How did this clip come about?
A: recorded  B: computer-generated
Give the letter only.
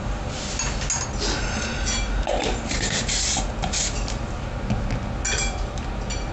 A